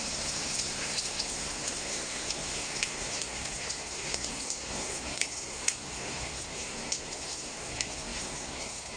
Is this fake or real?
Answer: fake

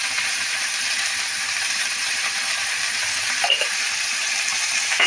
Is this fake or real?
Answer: fake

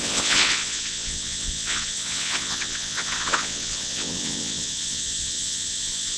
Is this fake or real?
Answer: fake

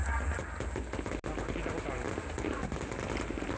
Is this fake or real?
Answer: real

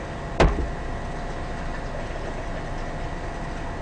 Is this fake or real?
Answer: real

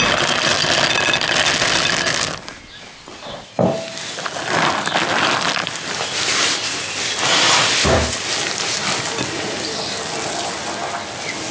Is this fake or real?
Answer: real